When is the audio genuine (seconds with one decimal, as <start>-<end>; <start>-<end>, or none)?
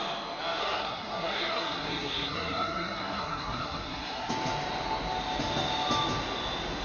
0.0-0.6; 4.3-6.8